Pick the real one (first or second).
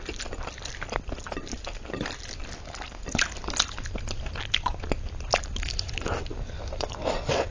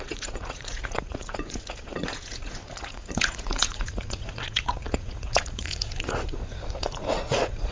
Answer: first